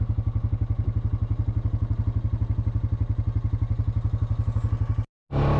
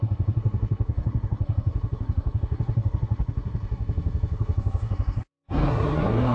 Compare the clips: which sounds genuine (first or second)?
first